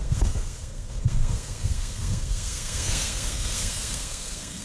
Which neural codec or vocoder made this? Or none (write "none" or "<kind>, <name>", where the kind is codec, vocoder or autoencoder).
codec, SNAC